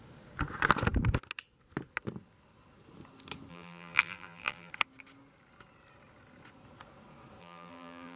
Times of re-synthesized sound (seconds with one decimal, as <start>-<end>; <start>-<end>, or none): 3.5-4.7; 7.4-8.2